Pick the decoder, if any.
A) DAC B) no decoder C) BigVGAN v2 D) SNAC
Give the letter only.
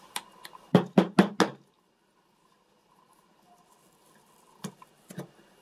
B